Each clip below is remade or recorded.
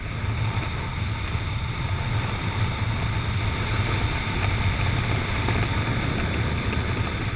recorded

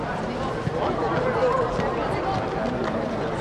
recorded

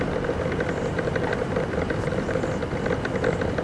recorded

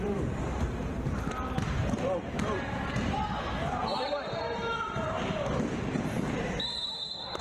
remade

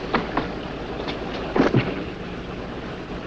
recorded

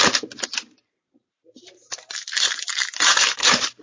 remade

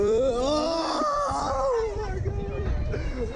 remade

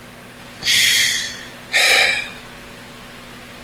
recorded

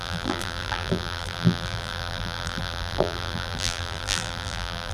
remade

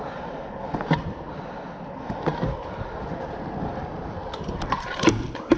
recorded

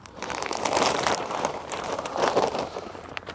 remade